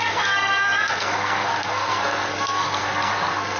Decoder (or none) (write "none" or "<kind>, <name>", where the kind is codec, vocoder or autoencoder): codec, SNAC